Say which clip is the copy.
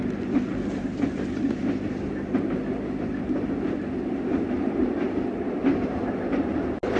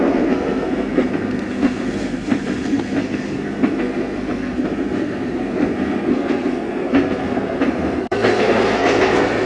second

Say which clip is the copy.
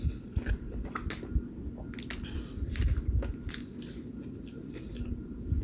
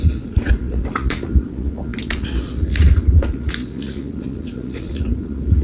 second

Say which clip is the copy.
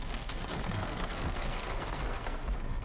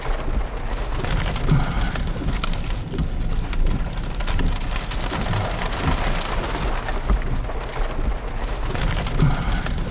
first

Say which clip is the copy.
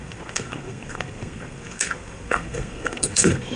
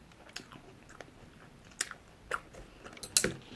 first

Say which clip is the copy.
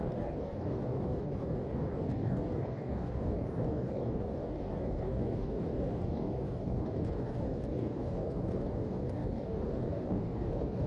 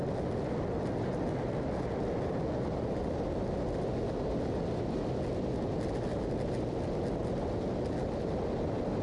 first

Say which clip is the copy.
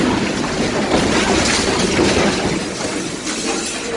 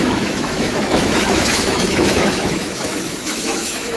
second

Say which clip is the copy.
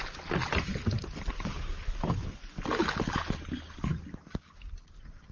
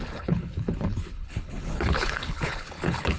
second